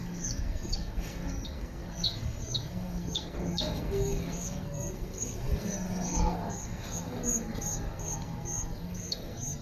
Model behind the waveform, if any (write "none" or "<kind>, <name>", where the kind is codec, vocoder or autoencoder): codec, SNAC